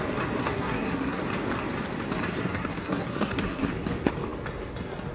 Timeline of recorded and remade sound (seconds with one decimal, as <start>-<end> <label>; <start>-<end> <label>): 0.0-0.4 recorded; 0.4-1.2 remade; 1.2-2.4 recorded; 2.4-3.7 remade; 3.7-5.1 recorded

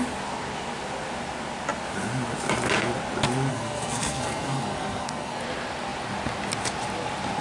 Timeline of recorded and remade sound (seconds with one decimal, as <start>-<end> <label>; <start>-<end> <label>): 0.0-3.5 recorded; 3.5-5.4 remade; 5.4-7.4 recorded

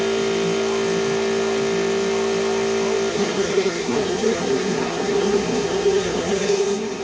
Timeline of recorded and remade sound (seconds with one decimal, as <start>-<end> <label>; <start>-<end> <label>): 0.0-3.1 recorded; 3.1-7.0 remade

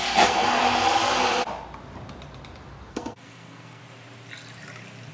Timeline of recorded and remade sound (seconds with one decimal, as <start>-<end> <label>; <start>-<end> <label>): 0.0-0.6 remade; 0.6-2.9 recorded; 2.9-3.8 remade; 3.8-5.1 recorded

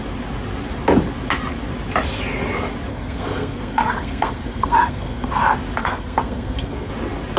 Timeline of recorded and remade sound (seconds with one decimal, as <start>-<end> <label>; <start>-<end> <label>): 0.0-2.9 recorded; 2.9-5.3 remade; 5.3-5.8 recorded; 5.8-6.9 remade; 6.9-7.4 recorded

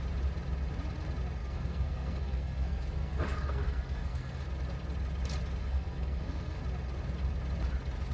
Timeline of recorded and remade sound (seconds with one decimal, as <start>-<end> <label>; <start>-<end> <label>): 0.0-1.4 recorded; 1.4-4.4 remade; 4.4-5.6 recorded; 5.6-6.6 remade; 6.6-8.1 recorded

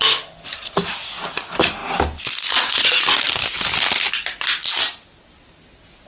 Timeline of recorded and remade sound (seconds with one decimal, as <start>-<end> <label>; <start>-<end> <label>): 0.0-6.1 recorded